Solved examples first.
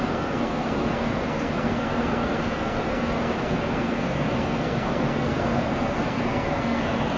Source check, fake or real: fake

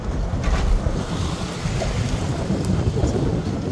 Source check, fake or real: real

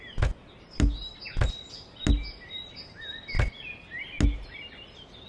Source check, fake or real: real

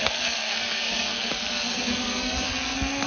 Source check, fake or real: fake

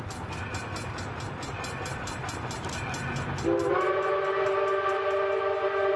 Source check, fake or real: real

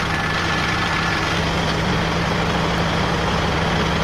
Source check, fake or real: real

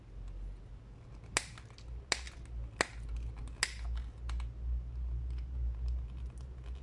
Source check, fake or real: real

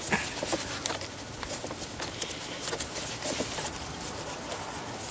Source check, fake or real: real